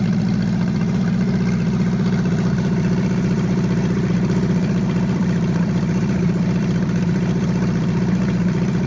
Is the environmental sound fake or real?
fake